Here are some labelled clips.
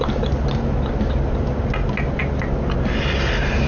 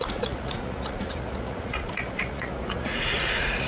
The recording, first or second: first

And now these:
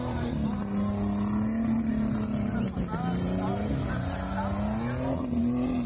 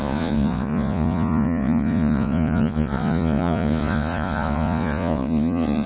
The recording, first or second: first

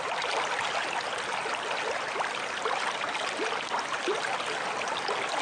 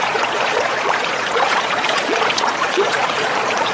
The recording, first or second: first